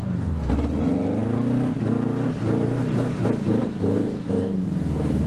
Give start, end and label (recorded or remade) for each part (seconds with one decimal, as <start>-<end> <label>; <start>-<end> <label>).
0.0-0.5 remade; 0.5-3.6 recorded; 3.6-5.3 remade